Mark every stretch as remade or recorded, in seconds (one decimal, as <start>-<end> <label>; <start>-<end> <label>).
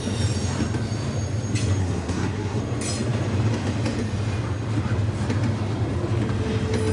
0.0-1.8 recorded; 1.8-2.6 remade; 2.6-6.9 recorded